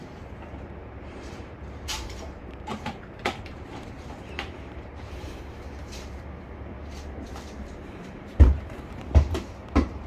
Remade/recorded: remade